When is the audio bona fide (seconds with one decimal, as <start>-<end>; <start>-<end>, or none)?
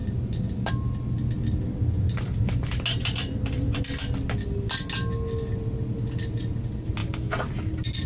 0.0-2.9; 3.8-8.1